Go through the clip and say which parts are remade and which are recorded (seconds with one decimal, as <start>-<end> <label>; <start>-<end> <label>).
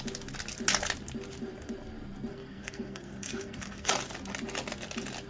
0.0-2.3 recorded; 2.3-3.9 remade; 3.9-5.3 recorded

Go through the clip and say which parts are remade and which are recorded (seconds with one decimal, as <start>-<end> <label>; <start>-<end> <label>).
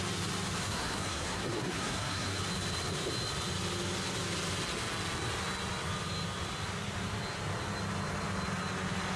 0.0-0.6 recorded; 0.6-2.4 remade; 2.4-9.2 recorded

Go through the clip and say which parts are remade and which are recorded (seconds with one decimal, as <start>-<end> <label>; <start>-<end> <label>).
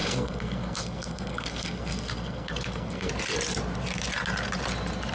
0.0-3.1 remade; 3.1-5.1 recorded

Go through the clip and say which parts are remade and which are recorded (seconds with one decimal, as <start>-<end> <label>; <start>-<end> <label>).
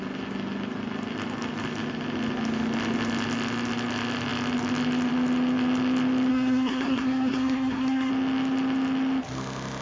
0.0-6.3 recorded; 6.3-8.1 remade; 8.1-9.8 recorded